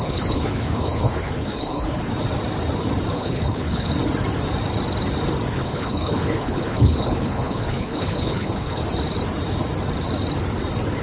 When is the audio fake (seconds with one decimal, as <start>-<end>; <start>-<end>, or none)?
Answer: 0.0-2.1; 3.1-3.9; 5.5-8.8